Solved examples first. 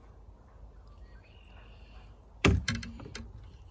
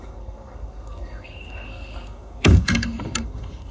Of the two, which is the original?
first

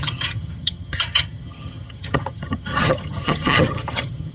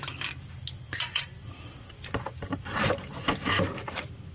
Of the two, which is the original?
second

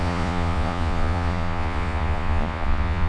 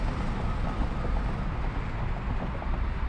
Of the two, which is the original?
second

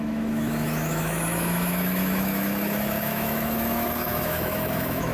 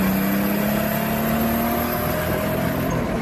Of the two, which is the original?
second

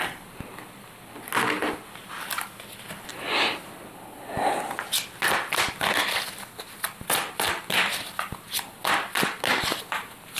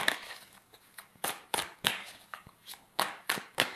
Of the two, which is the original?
first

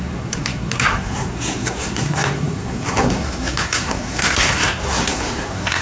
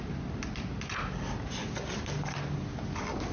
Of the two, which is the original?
second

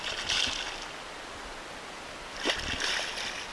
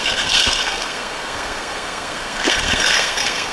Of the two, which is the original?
first